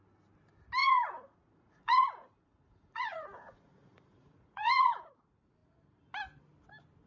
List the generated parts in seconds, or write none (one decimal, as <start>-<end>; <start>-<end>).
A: 0.8-5.1